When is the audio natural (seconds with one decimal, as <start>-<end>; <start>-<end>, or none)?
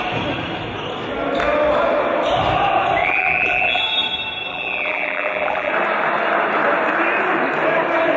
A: 0.0-3.0; 3.8-4.5; 5.7-8.2